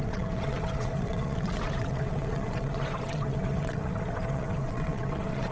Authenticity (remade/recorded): remade